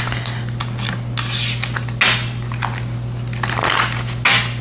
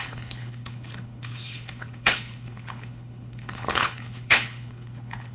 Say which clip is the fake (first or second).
second